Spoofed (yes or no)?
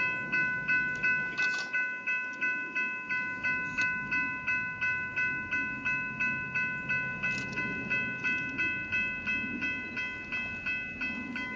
no